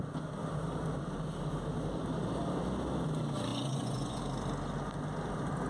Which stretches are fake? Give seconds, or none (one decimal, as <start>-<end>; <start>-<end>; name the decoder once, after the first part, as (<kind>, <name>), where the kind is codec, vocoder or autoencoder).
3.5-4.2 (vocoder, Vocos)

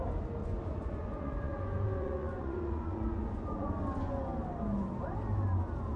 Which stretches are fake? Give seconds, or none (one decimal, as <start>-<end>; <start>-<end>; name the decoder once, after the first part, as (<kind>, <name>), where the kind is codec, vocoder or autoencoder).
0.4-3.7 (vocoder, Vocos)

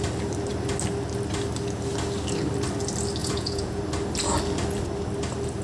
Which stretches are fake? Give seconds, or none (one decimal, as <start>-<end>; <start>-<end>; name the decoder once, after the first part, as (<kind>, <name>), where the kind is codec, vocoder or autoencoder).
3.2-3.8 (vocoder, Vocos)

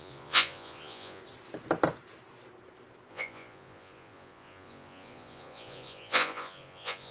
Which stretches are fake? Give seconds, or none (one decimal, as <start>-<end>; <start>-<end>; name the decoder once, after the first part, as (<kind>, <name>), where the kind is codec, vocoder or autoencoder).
0.0-1.2 (vocoder, Vocos); 3.1-7.1

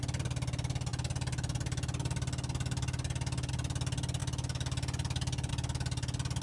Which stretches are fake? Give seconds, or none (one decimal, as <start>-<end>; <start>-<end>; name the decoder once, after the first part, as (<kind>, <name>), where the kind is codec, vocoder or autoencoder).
none